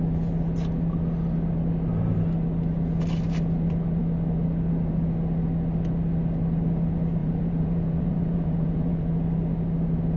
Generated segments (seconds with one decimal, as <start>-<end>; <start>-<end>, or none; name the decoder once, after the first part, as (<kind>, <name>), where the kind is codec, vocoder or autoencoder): 7.2-9.1 (vocoder, Vocos)